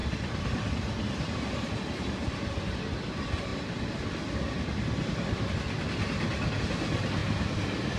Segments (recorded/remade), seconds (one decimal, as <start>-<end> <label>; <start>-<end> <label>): 0.0-8.0 recorded

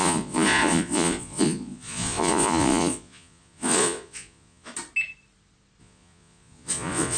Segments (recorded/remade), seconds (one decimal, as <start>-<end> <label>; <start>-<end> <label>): 0.0-4.7 remade; 4.7-5.8 recorded; 5.8-7.2 remade

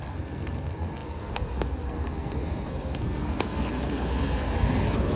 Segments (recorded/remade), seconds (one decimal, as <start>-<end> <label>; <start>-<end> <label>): 0.0-5.2 remade

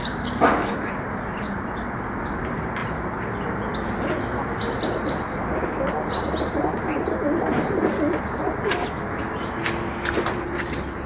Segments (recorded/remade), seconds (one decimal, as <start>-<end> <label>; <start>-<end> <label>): 0.0-0.9 remade; 0.9-11.1 recorded

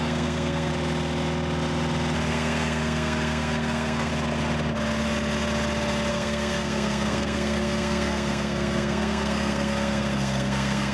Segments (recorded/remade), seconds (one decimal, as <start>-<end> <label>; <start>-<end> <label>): 0.0-0.7 remade; 0.7-2.3 recorded; 2.3-4.1 remade; 4.1-6.1 recorded; 6.1-10.9 remade

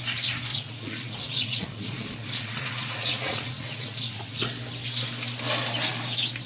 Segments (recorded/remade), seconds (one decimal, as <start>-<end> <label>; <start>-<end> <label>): 0.0-0.5 recorded; 0.5-4.4 remade; 4.4-6.5 recorded

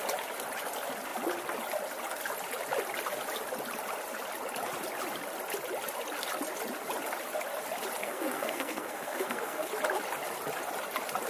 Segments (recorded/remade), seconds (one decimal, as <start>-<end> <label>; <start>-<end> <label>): 0.0-8.0 recorded; 8.0-9.7 remade; 9.7-11.3 recorded

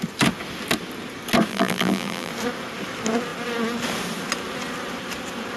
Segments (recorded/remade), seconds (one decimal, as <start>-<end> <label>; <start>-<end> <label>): 0.0-1.5 recorded; 1.5-2.3 remade; 2.3-5.6 recorded